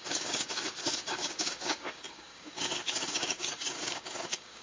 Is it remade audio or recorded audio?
remade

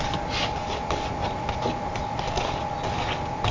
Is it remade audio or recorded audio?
recorded